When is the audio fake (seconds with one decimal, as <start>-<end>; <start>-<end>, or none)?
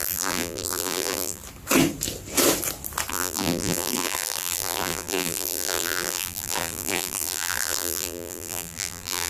0.0-1.4; 3.1-9.3